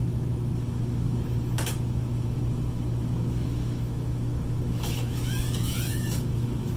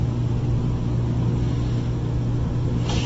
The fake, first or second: first